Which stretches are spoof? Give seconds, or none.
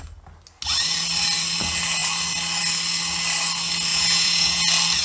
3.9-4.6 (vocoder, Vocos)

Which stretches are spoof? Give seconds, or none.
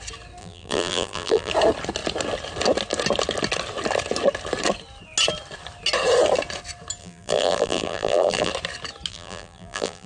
0.4-1.5 (vocoder, BigVGAN v2); 7.0-8.5; 9.1-10.1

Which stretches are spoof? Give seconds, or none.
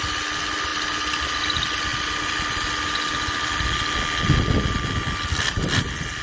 none